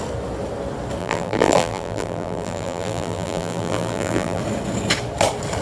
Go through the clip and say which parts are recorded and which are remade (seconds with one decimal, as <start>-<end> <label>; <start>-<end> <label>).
0.0-1.0 recorded; 1.0-4.4 remade; 4.4-5.6 recorded